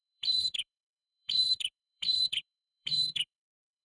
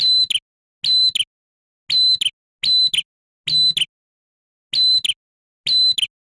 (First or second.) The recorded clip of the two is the second